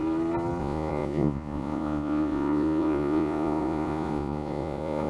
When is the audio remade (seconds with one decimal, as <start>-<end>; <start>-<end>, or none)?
0.6-5.1